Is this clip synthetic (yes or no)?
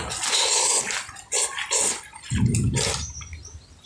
no